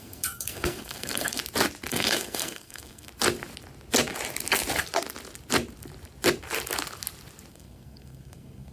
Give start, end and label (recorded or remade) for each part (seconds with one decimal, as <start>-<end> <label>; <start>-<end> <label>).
0.0-1.4 remade; 1.4-1.9 recorded; 1.9-3.1 remade; 3.1-7.5 recorded; 7.5-8.7 remade